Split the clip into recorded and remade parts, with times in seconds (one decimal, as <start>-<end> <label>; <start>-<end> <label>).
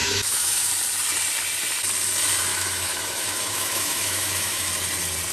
0.0-0.7 remade; 0.7-2.5 recorded; 2.5-4.7 remade; 4.7-5.3 recorded